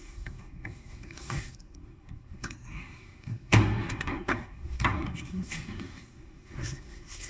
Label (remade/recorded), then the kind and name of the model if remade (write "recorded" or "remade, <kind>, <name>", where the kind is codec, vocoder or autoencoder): remade, codec, SNAC